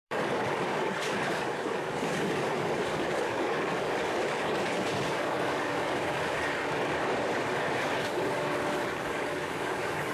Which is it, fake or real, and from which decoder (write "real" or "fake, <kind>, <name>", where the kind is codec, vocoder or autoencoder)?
fake, codec, DAC